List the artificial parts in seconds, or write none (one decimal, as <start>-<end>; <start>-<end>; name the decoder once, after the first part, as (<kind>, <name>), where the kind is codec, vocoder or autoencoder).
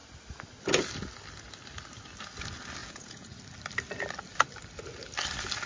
2.8-3.4 (vocoder, Vocos)